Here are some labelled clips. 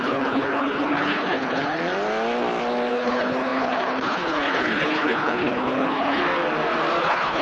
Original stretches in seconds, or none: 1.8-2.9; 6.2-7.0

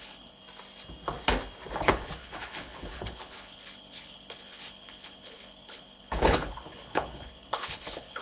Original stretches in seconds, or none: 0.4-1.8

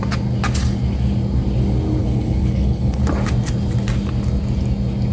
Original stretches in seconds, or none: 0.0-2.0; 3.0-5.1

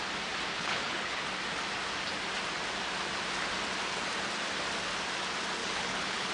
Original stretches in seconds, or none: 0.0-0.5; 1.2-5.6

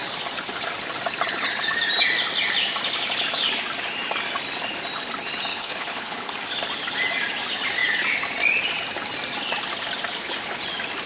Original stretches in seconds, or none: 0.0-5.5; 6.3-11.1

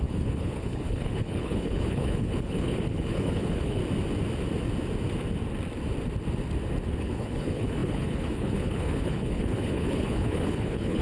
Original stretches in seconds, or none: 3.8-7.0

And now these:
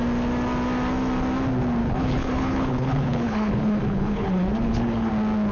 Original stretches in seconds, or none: 0.0-1.8; 5.1-5.5

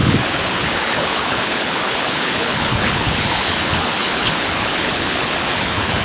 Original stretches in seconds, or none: none